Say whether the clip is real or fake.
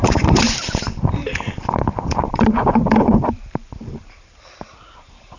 fake